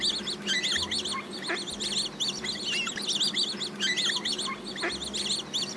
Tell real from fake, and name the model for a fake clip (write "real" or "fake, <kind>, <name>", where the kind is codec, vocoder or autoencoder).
real